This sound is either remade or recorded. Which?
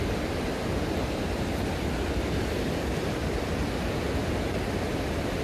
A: recorded